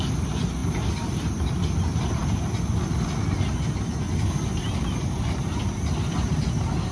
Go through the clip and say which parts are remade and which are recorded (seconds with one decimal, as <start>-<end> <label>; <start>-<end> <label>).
0.0-6.9 recorded